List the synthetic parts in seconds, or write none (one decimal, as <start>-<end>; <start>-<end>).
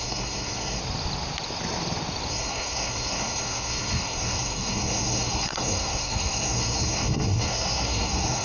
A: 0.0-0.8; 2.3-8.4